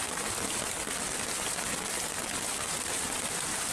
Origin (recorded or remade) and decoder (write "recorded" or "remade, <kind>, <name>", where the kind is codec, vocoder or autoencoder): recorded